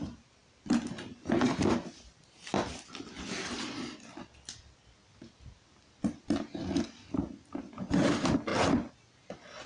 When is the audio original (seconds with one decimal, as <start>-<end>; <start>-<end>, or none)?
0.0-9.7